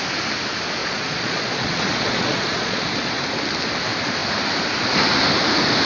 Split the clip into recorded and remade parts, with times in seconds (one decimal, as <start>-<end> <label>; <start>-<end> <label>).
0.0-0.8 recorded; 0.8-3.2 remade; 3.2-5.8 recorded